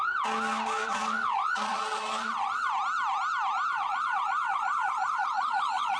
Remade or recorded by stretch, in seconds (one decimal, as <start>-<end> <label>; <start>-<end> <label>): 0.0-0.8 recorded; 0.8-2.7 remade; 2.7-3.7 recorded; 3.7-6.0 remade